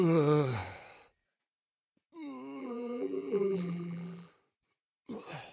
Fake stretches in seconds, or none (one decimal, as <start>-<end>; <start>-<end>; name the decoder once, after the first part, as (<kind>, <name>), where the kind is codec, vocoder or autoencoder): 2.6-4.3 (vocoder, BigVGAN v2)